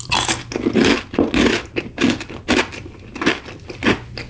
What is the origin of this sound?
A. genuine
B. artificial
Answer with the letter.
A